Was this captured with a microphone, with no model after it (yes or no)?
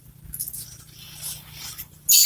yes